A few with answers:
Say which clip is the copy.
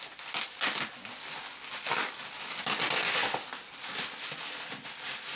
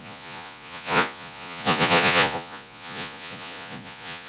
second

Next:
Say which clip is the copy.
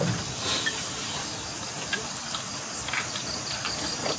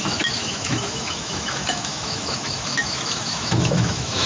second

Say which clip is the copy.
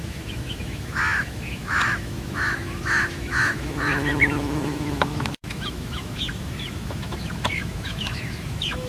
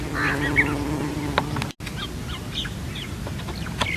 first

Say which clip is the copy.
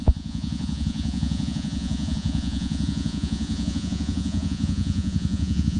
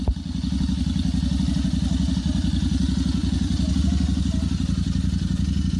first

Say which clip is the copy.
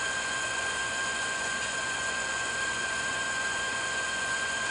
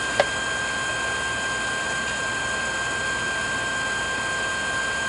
first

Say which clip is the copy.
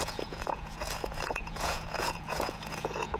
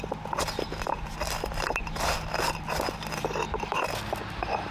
first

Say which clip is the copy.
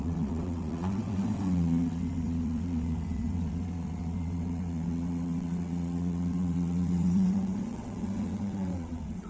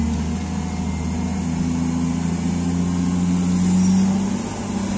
first